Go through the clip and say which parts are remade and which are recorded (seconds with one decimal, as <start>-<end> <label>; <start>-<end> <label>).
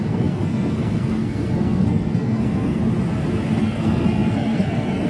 0.0-2.8 remade; 2.8-3.6 recorded; 3.6-5.1 remade